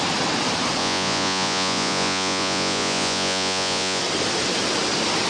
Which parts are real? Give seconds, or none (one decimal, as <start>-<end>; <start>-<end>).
0.0-0.8; 4.0-5.3